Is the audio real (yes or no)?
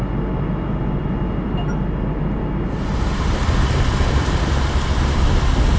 yes